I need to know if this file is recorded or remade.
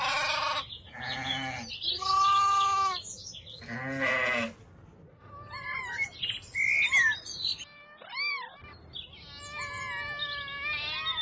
recorded